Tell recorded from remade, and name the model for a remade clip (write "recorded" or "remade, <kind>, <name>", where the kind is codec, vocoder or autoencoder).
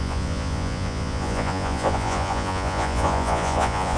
remade, vocoder, Vocos